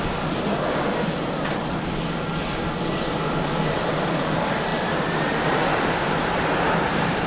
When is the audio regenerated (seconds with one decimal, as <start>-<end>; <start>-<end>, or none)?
0.0-0.5; 3.7-7.3

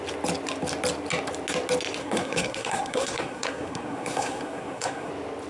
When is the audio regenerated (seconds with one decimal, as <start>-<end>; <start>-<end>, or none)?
2.0-5.1

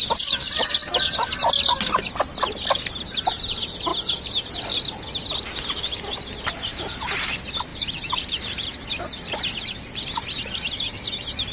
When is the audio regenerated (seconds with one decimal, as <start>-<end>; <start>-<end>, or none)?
0.8-1.3; 6.7-7.3; 7.7-8.5

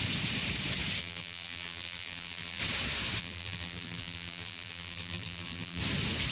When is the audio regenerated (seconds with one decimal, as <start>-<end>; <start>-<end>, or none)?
1.0-2.6; 3.2-5.8